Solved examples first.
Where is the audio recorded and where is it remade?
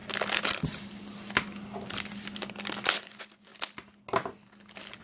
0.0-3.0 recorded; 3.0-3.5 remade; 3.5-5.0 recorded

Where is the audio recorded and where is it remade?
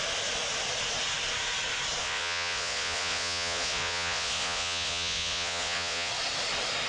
0.0-2.0 recorded; 2.0-6.1 remade; 6.1-6.9 recorded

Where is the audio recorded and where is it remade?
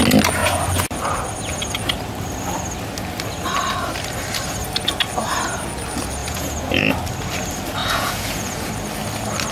0.0-6.2 recorded; 6.2-6.9 remade; 6.9-7.8 recorded; 7.8-8.7 remade; 8.7-9.5 recorded